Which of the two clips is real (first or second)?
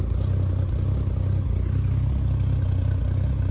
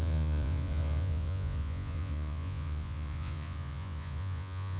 first